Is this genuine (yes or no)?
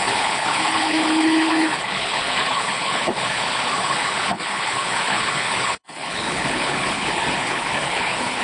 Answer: no